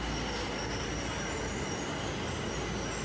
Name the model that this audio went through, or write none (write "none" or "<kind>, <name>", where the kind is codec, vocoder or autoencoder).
none